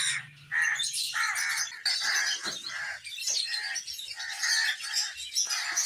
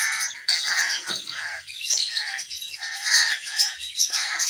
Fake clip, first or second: second